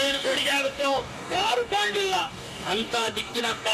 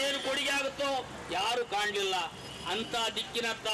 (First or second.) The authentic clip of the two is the second